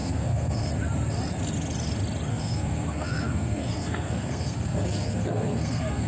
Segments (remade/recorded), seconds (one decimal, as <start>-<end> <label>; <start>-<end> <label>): 0.0-0.7 remade; 0.7-2.3 recorded; 2.3-6.1 remade